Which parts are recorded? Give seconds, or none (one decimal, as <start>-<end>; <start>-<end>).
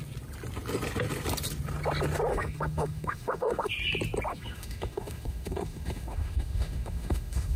0.0-2.3; 3.7-4.3